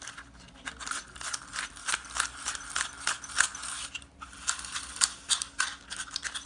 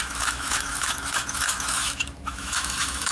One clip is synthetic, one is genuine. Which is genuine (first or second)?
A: first